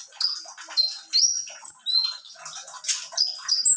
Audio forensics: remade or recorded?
recorded